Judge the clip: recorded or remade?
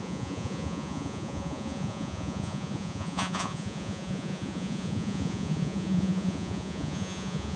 remade